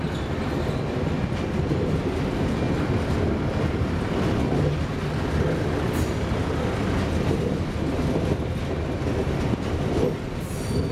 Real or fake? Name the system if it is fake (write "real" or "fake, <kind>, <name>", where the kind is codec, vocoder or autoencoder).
real